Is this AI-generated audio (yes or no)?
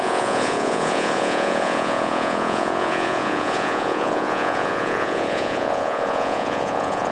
yes